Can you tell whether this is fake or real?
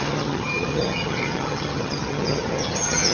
fake